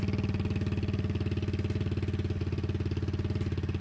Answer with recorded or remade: recorded